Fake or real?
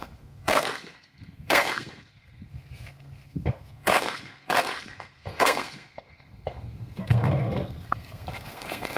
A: fake